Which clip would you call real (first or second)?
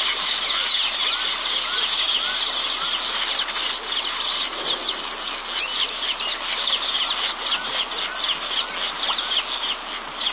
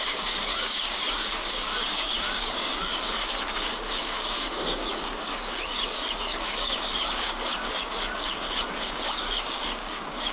first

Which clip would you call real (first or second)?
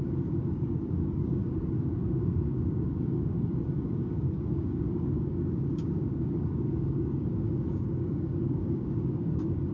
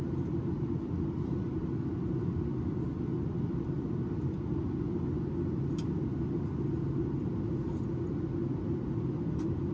second